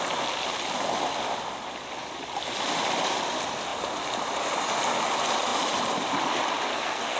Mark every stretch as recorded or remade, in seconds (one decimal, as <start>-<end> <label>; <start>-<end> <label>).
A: 0.0-6.7 recorded; 6.7-7.2 remade